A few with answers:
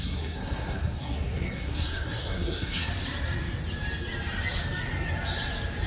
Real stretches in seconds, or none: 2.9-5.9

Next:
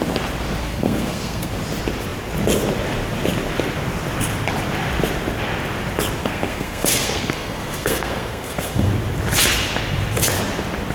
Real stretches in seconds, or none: 0.0-0.6; 1.5-6.2; 8.9-10.9

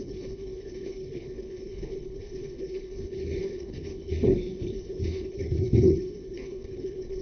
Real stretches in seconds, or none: none

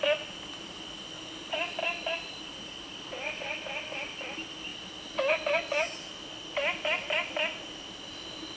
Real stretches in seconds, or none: 0.0-8.6